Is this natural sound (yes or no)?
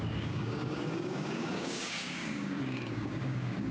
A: no